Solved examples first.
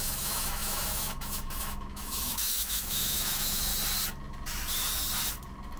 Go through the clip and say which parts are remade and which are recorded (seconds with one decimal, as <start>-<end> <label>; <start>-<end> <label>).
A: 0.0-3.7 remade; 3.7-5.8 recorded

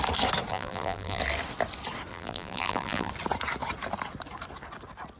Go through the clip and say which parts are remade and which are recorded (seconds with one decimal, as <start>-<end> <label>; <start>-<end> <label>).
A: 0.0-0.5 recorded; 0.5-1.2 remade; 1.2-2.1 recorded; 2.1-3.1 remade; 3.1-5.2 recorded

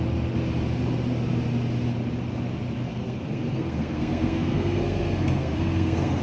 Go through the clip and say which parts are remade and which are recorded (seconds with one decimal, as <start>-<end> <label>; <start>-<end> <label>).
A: 0.0-2.9 recorded; 2.9-6.2 remade

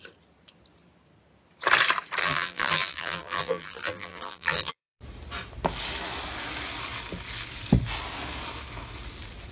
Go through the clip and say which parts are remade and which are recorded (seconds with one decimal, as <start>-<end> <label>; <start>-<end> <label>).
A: 0.0-2.2 recorded; 2.2-5.0 remade; 5.0-9.5 recorded

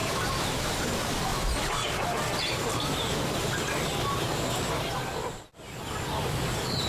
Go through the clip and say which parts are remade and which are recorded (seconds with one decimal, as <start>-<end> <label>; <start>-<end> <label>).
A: 0.0-6.9 recorded

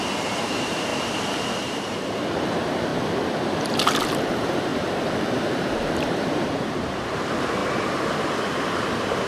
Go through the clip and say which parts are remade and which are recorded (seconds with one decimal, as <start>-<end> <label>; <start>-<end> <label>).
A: 0.0-0.9 remade; 0.9-1.6 recorded; 1.6-2.9 remade; 2.9-3.7 recorded; 3.7-4.7 remade; 4.7-5.4 recorded; 5.4-7.6 remade; 7.6-8.9 recorded; 8.9-9.3 remade